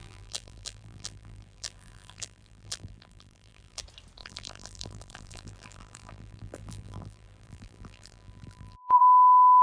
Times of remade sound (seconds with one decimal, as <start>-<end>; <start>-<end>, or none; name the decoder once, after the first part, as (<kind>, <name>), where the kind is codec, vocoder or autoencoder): 0.0-3.8 (vocoder, BigVGAN v2); 4.2-9.0

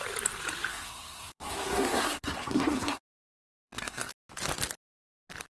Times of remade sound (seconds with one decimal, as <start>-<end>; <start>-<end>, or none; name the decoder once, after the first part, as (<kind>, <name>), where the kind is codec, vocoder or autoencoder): 0.7-3.0 (codec, SNAC); 3.5-4.1

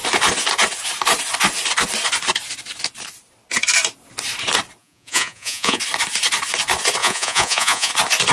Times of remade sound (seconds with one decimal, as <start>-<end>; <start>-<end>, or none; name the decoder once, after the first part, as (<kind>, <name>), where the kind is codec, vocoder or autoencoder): 4.8-5.8 (vocoder, Vocos); 7.0-7.9

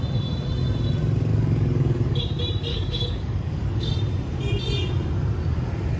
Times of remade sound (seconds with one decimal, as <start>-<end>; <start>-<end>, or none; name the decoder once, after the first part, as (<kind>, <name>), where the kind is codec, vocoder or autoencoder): 1.3-2.2 (codec, DAC); 2.7-3.9

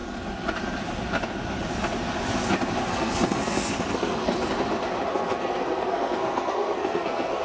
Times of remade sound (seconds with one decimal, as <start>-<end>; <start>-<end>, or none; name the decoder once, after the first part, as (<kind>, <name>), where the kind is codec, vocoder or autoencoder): 2.9-4.3 (codec, SNAC); 5.1-7.4